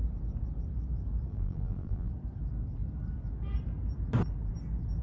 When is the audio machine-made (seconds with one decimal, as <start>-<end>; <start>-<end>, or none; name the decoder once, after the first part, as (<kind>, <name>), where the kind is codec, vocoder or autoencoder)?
1.3-2.1 (vocoder, BigVGAN v2)